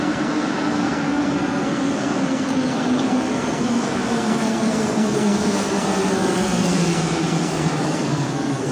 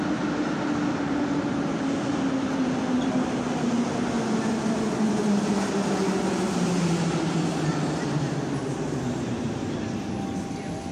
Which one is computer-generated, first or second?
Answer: first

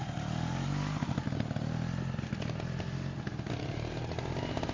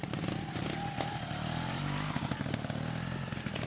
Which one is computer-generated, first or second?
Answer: second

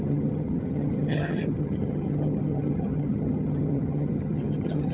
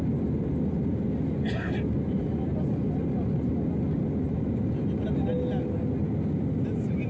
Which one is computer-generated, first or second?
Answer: first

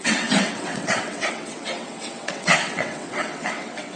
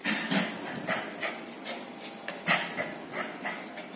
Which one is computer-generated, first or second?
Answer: first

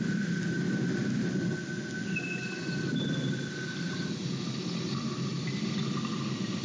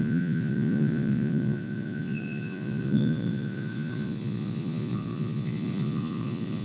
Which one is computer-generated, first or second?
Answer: second